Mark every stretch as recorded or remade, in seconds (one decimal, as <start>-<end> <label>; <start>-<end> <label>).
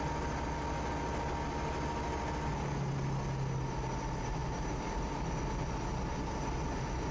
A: 0.0-7.1 recorded